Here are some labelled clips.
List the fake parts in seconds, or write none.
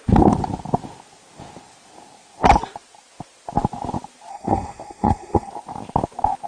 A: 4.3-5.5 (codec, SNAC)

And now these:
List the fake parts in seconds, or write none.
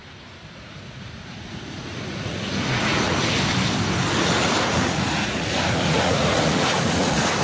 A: 0.0-3.2 (vocoder, Vocos); 4.2-7.4